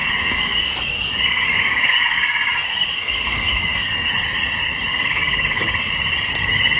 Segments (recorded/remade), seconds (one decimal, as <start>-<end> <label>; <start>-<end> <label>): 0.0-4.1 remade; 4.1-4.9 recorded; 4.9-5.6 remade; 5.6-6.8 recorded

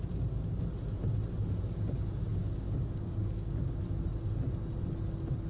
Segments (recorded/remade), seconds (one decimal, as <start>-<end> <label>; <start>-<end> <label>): 0.0-2.3 recorded; 2.3-3.8 remade; 3.8-5.5 recorded

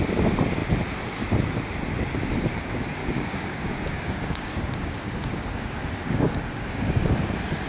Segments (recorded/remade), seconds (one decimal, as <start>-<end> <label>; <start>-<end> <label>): 0.0-3.0 recorded; 3.0-7.3 remade; 7.3-7.7 recorded